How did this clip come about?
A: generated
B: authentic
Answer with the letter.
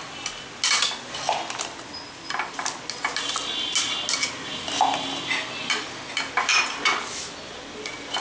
B